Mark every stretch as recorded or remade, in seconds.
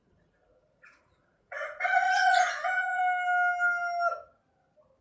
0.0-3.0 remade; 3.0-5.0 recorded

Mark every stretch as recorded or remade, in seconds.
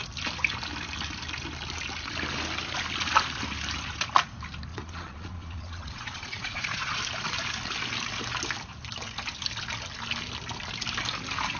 0.0-4.7 recorded; 4.7-7.0 remade; 7.0-11.6 recorded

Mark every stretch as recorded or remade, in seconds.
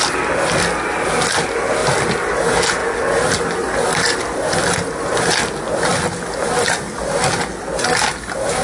0.0-1.8 recorded; 1.8-2.3 remade; 2.3-2.8 recorded; 2.8-5.3 remade; 5.3-8.6 recorded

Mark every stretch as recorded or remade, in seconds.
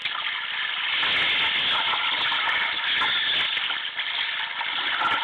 0.0-5.2 recorded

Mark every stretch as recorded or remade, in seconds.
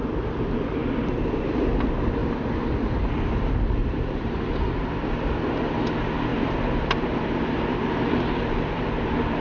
0.0-3.8 recorded; 3.8-4.5 remade; 4.5-6.3 recorded; 6.3-8.9 remade; 8.9-9.4 recorded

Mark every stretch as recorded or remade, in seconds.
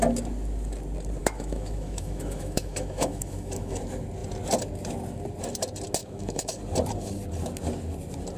0.0-1.2 recorded; 1.2-3.8 remade; 3.8-6.0 recorded; 6.0-6.6 remade; 6.6-8.4 recorded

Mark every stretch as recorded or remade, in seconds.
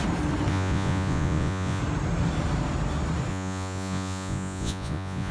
0.0-0.5 recorded; 0.5-1.8 remade; 1.8-3.3 recorded; 3.3-5.3 remade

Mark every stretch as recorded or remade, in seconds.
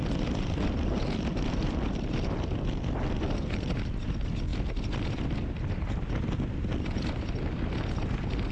0.0-8.5 recorded